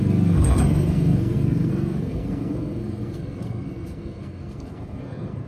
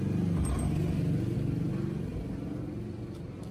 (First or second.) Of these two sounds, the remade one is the first